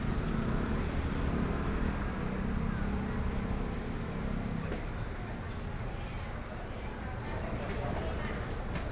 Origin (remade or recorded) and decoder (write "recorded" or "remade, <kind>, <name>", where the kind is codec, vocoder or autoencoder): recorded